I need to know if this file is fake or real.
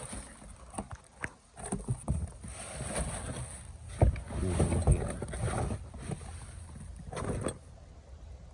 real